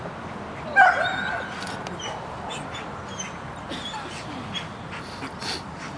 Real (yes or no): yes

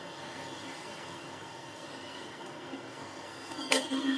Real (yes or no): no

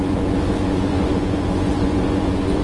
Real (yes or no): no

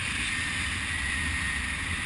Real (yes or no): yes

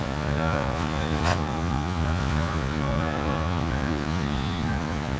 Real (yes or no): no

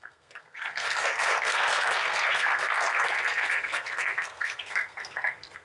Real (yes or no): no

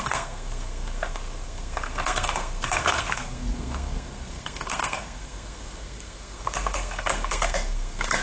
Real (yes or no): no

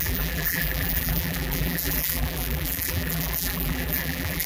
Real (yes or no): no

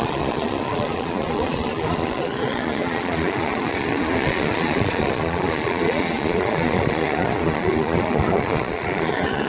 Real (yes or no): no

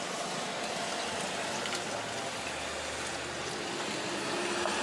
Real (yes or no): yes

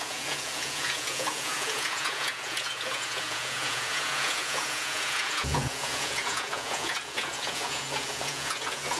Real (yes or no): no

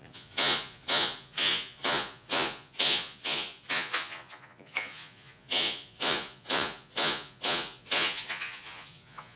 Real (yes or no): no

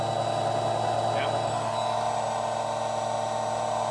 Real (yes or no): yes